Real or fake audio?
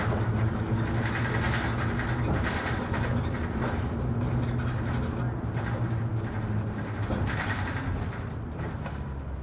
real